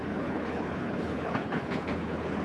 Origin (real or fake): fake